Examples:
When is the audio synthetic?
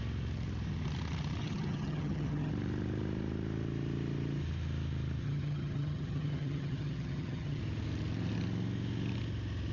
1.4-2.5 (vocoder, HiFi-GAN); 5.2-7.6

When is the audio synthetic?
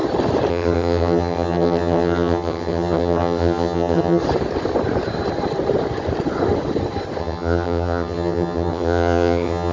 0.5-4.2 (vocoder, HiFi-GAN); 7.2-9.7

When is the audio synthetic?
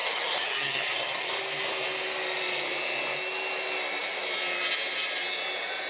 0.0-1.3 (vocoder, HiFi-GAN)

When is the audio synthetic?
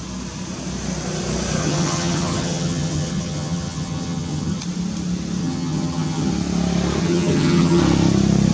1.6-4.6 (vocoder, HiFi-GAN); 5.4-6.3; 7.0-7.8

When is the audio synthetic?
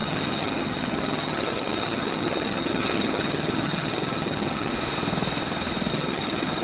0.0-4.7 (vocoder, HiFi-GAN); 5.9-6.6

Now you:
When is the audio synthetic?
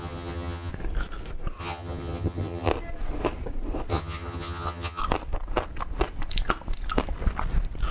0.0-0.7 (vocoder, HiFi-GAN); 1.6-2.7; 3.9-5.0